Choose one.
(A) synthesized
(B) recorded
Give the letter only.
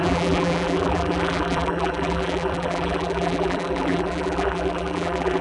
A